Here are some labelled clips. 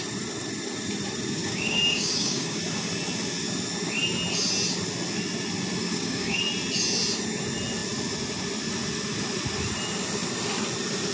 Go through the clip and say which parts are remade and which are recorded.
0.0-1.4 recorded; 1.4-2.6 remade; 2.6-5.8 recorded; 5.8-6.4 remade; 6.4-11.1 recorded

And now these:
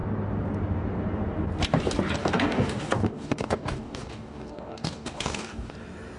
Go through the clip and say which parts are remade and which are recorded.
0.0-2.2 recorded; 2.2-5.7 remade; 5.7-6.2 recorded

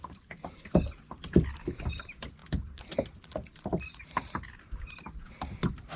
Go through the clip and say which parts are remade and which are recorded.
0.0-6.0 recorded

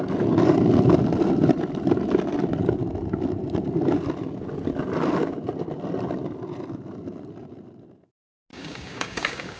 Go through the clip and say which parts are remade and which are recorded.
0.0-8.5 recorded; 8.5-9.6 remade

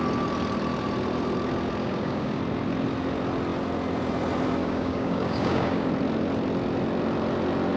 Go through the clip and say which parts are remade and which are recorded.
0.0-1.8 recorded; 1.8-2.4 remade; 2.4-4.6 recorded; 4.6-5.9 remade; 5.9-7.8 recorded

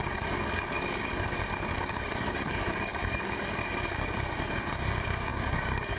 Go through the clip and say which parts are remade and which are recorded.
0.0-6.0 remade

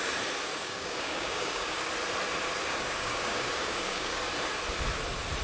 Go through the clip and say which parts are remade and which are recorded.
0.0-0.5 recorded; 0.5-1.9 remade; 1.9-2.7 recorded; 2.7-4.2 remade; 4.2-5.4 recorded

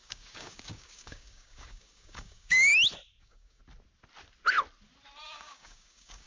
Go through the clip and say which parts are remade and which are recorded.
0.0-2.7 remade; 2.7-3.2 recorded; 3.2-3.6 remade; 3.6-5.2 recorded; 5.2-6.3 remade